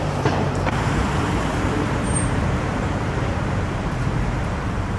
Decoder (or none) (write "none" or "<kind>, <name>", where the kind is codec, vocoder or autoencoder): vocoder, BigVGAN v2